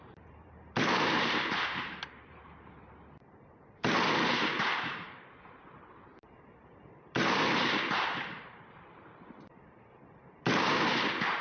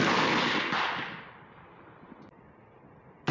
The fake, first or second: first